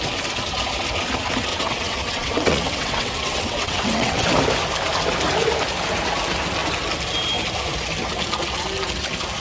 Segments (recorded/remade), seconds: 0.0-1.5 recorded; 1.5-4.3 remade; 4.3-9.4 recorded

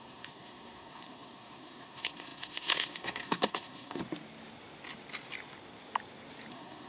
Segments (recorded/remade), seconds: 0.0-4.0 remade; 4.0-6.5 recorded; 6.5-6.9 remade

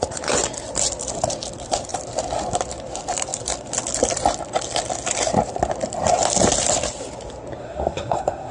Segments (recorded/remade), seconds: 0.0-7.6 recorded; 7.6-8.5 remade

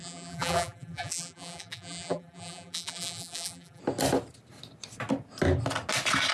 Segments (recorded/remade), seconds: 0.0-3.8 remade; 3.8-6.3 recorded

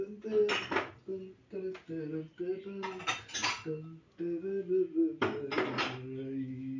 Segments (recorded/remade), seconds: 0.0-6.8 recorded

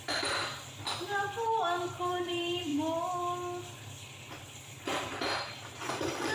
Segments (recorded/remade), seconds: 0.0-2.7 remade; 2.7-4.8 recorded; 4.8-6.3 remade